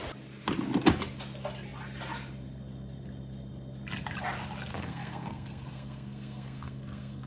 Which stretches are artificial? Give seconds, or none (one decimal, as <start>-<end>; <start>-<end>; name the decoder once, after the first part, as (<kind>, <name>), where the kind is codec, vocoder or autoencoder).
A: 4.7-7.3 (codec, SNAC)